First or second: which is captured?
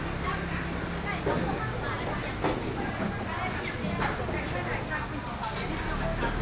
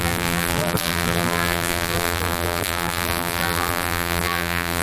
first